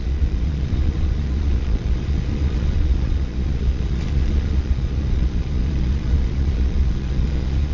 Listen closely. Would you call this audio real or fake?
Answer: fake